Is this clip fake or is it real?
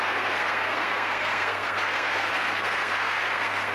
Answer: fake